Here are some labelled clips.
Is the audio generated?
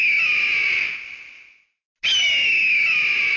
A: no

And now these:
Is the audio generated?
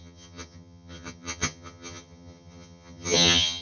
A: yes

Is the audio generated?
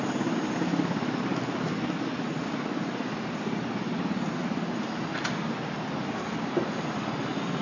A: no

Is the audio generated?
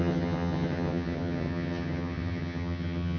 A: yes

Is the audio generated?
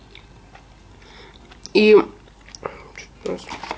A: no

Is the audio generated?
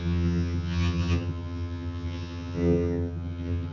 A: yes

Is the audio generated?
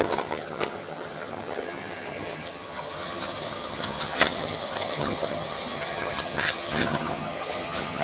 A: yes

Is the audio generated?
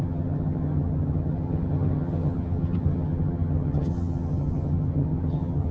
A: yes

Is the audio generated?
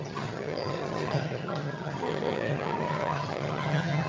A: yes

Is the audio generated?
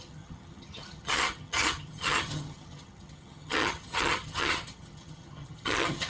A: yes